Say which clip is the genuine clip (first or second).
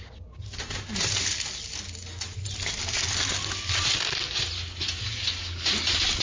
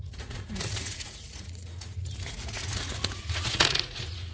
first